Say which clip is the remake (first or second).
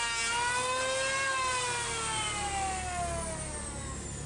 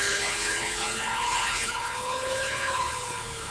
second